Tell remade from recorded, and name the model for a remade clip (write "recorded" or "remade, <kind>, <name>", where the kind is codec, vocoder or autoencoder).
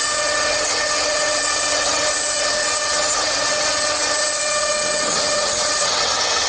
remade, vocoder, WaveNeXt